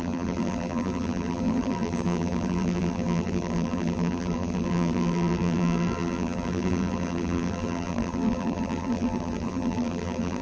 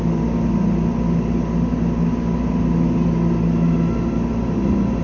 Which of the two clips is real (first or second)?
second